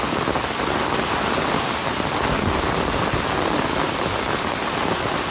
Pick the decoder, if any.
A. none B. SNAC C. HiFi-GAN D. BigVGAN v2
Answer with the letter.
A